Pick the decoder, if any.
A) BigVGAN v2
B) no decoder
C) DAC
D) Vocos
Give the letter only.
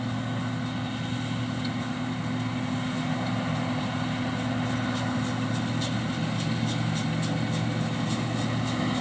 B